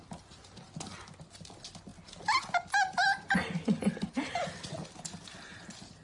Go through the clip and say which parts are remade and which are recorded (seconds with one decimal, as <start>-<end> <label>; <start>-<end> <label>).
0.0-6.0 recorded